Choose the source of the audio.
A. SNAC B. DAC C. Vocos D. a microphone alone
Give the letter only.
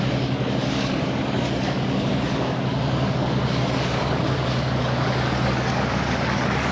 B